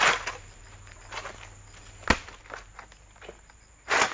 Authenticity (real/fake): real